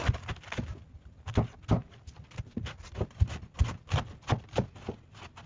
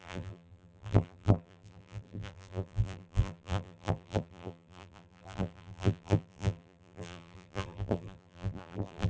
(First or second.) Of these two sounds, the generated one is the second